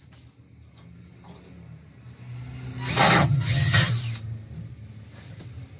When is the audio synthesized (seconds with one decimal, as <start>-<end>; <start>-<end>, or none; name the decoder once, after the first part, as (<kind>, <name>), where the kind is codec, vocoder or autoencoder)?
3.2-3.9 (vocoder, HiFi-GAN)